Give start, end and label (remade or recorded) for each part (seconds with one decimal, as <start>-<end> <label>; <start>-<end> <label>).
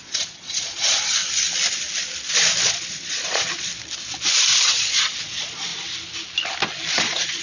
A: 0.0-1.2 remade; 1.2-2.6 recorded; 2.6-3.7 remade; 3.7-4.6 recorded; 4.6-5.7 remade; 5.7-6.9 recorded; 6.9-7.4 remade